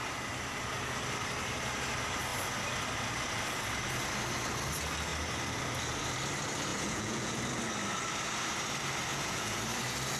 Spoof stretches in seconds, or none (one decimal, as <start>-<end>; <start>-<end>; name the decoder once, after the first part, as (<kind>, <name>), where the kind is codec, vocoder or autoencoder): 6.7-7.4 (vocoder, Vocos); 9.1-9.6